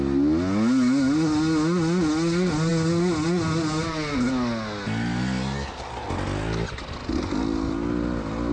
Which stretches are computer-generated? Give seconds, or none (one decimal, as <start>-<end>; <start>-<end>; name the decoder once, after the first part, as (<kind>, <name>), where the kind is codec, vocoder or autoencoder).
none